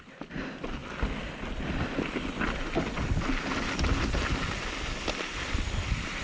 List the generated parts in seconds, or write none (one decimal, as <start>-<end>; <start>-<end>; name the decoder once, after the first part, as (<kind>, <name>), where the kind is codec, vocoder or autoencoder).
none